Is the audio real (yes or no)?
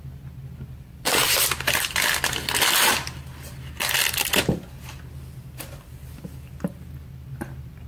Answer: no